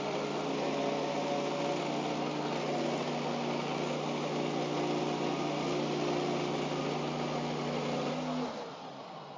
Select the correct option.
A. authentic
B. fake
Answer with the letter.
A